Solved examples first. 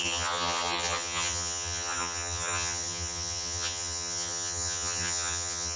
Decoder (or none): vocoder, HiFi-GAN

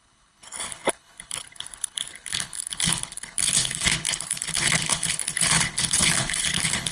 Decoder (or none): codec, HILCodec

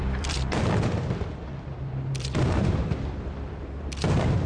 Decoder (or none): vocoder, BigVGAN v2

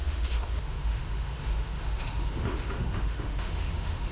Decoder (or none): autoencoder, DAC-VAE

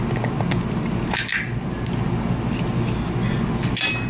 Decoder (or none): none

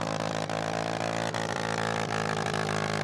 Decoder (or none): vocoder, BigVGAN v2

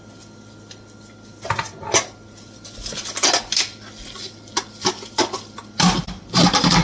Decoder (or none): none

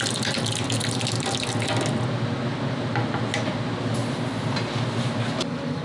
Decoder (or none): none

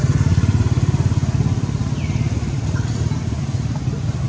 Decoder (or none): none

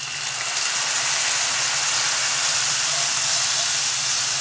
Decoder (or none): none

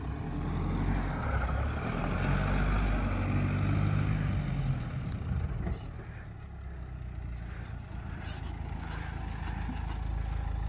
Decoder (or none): none